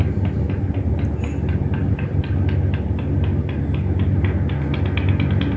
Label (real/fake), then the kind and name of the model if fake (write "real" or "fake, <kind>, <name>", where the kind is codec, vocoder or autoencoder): real